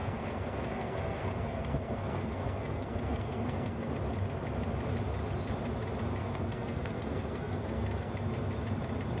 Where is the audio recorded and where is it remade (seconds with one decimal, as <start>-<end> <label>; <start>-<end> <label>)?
0.0-3.9 remade; 3.9-6.2 recorded; 6.2-8.1 remade; 8.1-9.2 recorded